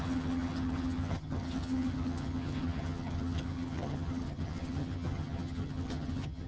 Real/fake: fake